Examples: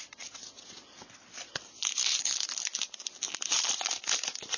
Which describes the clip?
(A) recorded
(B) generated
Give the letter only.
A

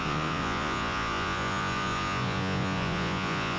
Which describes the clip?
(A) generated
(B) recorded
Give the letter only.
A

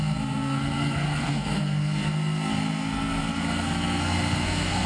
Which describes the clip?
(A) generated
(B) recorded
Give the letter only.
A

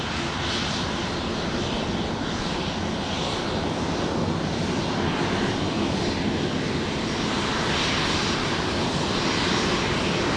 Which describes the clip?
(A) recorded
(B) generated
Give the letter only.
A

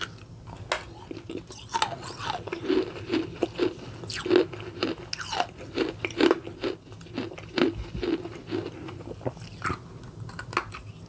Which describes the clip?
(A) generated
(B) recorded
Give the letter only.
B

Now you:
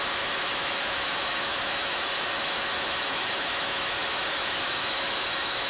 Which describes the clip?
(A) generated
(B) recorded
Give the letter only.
A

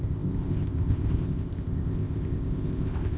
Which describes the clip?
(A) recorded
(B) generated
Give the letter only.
B